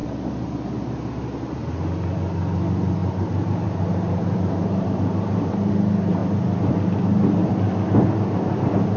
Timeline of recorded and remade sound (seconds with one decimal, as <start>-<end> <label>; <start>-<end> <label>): 0.0-3.0 recorded; 3.0-5.7 remade; 5.7-9.0 recorded